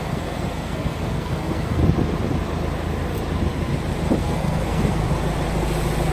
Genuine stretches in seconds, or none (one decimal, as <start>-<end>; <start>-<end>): 1.8-4.2; 5.0-6.1